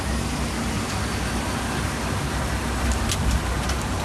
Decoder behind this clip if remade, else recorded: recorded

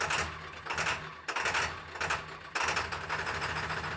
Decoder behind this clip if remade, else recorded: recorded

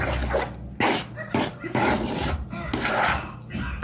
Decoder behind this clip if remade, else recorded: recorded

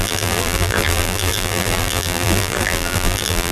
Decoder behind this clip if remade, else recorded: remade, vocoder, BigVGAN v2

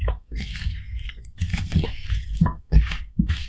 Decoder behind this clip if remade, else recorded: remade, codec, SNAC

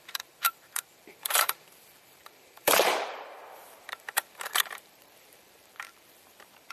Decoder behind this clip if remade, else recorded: remade, vocoder, BigVGAN v2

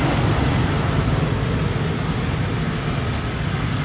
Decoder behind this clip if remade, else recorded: recorded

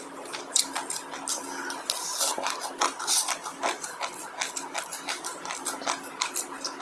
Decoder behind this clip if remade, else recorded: recorded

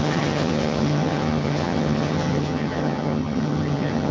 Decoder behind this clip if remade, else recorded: remade, vocoder, HiFi-GAN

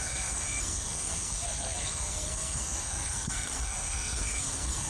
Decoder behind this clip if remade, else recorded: remade, codec, SNAC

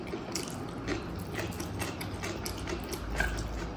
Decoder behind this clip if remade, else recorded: recorded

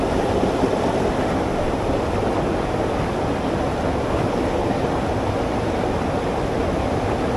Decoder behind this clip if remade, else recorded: recorded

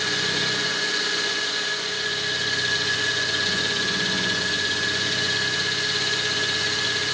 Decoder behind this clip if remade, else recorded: remade, vocoder, Vocos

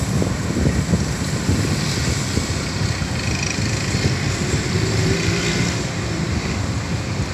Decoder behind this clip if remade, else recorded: recorded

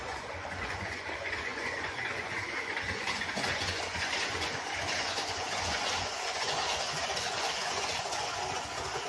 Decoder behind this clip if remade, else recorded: remade, vocoder, Vocos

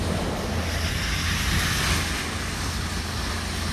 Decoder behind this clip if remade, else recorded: recorded